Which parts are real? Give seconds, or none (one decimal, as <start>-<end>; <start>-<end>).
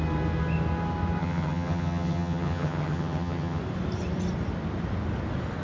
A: 0.0-1.2; 3.6-5.6